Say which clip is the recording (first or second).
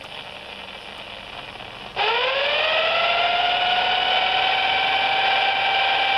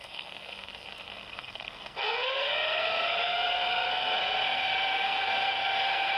first